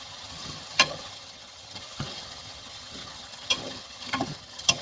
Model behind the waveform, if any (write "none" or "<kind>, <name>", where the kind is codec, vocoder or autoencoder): vocoder, HiFi-GAN